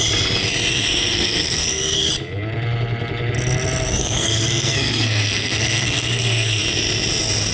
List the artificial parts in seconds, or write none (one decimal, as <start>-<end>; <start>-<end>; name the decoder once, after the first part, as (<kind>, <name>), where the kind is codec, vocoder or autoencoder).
0.7-2.1 (codec, SNAC); 4.0-6.6